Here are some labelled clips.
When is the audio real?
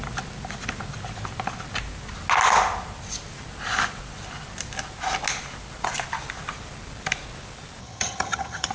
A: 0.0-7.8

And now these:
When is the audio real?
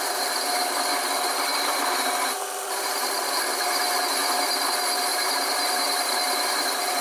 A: 0.0-5.1